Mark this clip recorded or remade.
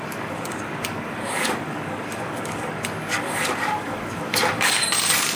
remade